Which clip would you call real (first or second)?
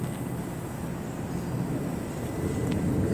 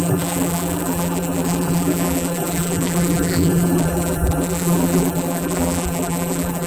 first